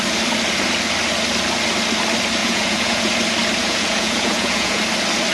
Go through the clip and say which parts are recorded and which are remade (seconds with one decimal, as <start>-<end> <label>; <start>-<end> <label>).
0.0-2.4 recorded; 2.4-3.1 remade; 3.1-3.6 recorded; 3.6-4.8 remade; 4.8-5.3 recorded